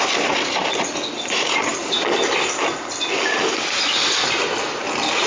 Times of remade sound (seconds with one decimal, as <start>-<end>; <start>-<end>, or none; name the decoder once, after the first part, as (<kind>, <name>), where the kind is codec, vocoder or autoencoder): none